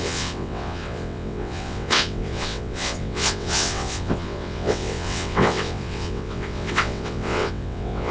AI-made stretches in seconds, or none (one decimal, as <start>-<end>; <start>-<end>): 0.0-8.1